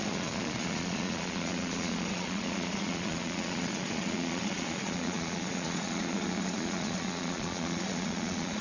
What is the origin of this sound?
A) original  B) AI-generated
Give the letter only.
B